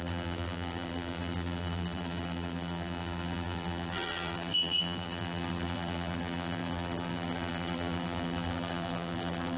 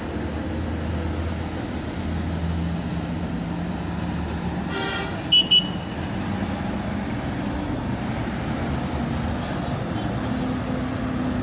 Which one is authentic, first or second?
second